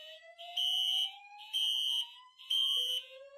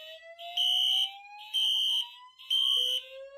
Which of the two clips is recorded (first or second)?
second